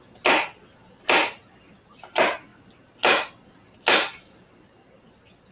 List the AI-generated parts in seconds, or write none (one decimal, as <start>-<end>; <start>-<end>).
none